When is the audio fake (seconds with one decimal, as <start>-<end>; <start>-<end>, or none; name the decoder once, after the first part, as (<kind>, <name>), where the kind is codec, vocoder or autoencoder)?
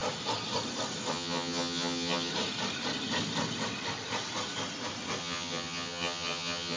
1.1-2.3 (vocoder, HiFi-GAN); 5.2-6.8